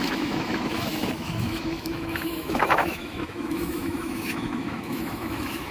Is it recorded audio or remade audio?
remade